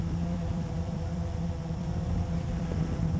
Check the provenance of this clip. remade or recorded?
remade